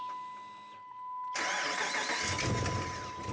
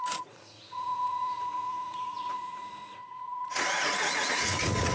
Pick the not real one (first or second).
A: second